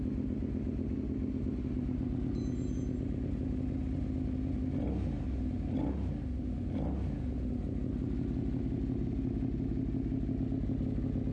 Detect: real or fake real